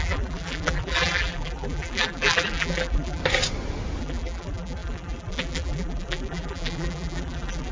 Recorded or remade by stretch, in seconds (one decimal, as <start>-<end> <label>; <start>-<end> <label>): 0.0-3.2 remade; 3.2-4.0 recorded; 4.0-7.7 remade